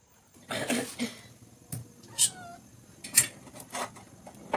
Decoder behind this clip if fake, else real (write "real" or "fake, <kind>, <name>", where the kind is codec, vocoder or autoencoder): real